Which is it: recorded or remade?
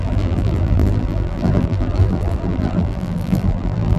remade